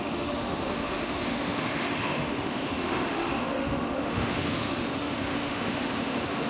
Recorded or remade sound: remade